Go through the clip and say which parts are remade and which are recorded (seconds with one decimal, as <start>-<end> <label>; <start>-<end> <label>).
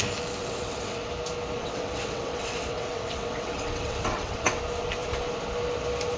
0.0-0.4 recorded; 0.4-1.1 remade; 1.1-1.6 recorded; 1.6-4.6 remade; 4.6-6.2 recorded